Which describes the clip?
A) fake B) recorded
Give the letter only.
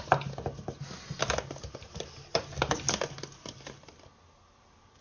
B